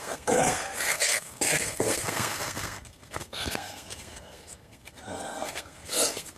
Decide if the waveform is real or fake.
fake